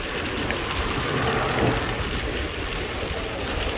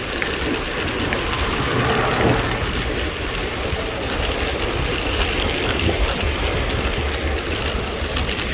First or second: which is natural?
second